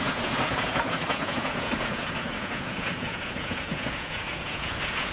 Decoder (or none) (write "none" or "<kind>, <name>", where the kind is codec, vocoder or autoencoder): vocoder, Vocos